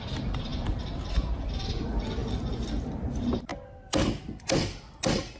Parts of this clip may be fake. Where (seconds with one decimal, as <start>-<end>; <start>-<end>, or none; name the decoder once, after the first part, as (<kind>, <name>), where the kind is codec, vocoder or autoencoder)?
none